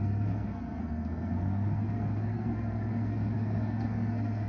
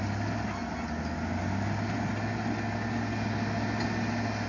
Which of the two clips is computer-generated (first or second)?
first